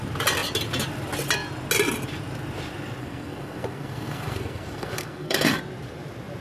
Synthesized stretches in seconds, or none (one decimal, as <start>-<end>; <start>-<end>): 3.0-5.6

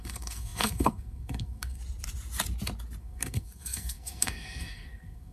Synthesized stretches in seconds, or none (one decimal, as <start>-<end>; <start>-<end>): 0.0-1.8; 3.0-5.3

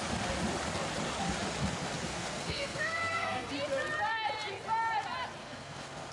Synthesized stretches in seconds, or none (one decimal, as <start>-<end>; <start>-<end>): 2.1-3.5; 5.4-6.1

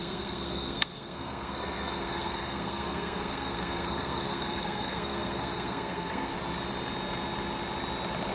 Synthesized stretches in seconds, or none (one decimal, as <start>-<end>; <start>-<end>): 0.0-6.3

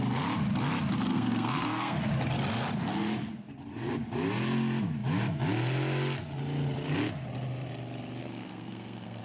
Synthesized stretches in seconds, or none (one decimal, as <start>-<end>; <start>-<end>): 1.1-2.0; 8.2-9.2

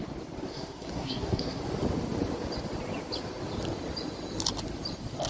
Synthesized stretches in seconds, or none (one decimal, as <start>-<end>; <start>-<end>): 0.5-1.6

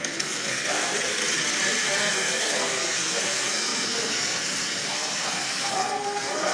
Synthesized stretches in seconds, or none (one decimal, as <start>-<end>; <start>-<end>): 0.0-1.2; 1.8-6.5

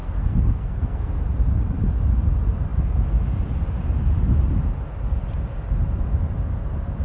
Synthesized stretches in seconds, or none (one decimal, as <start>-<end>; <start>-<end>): 0.0-1.2